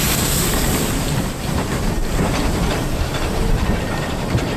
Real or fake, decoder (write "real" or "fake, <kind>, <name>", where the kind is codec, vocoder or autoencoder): fake, vocoder, BigVGAN v2